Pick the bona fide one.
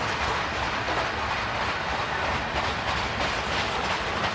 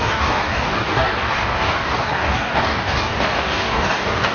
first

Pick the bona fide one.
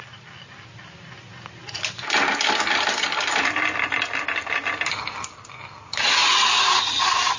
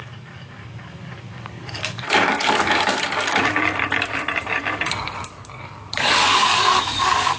first